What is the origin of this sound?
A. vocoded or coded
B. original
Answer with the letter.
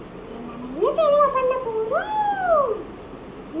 B